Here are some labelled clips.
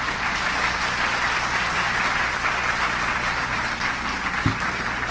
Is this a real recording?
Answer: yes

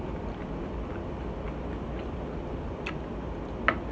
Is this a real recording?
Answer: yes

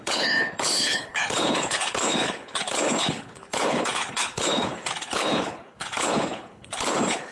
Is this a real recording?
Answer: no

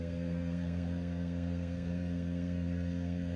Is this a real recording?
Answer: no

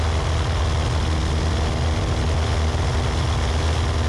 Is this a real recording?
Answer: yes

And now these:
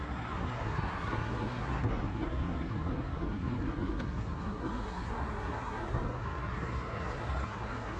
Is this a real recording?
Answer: no